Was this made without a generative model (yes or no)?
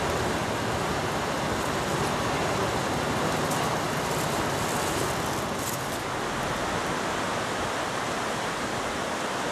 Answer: yes